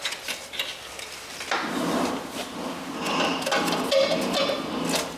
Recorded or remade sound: recorded